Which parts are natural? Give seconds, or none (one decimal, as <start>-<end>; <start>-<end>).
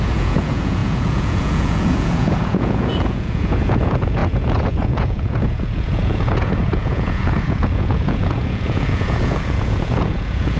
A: none